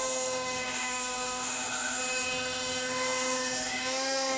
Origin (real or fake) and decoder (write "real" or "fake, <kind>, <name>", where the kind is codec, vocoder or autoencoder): fake, autoencoder, DAC-VAE